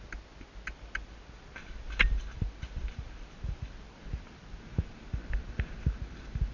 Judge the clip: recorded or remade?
recorded